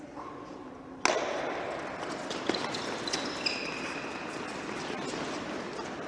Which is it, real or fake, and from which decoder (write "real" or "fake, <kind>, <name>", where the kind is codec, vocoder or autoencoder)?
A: real